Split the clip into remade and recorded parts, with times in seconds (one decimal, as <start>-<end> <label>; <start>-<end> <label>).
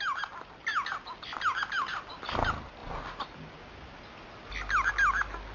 0.0-5.5 recorded